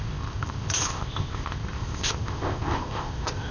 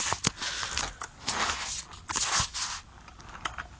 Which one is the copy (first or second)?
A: first